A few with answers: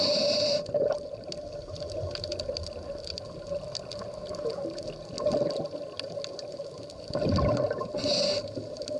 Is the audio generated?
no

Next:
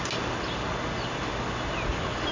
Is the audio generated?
no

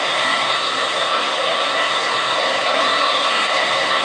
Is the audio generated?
yes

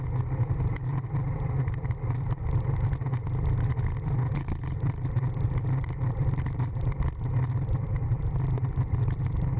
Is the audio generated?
no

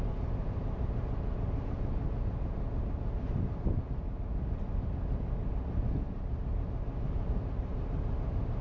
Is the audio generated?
no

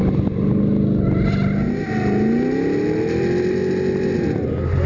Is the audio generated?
no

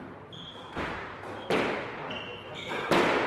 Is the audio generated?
no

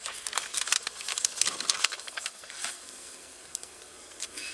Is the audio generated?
yes